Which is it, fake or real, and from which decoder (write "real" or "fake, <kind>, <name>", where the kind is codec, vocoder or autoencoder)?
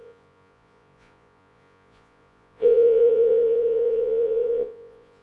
fake, vocoder, Vocos